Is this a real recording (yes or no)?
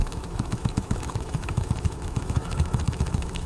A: no